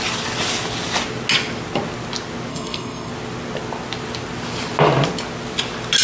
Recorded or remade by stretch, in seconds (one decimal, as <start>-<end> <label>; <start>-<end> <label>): 0.0-2.5 recorded; 2.5-3.1 remade; 3.1-6.0 recorded